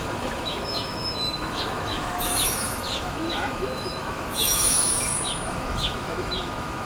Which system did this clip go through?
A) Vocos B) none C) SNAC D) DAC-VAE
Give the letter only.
D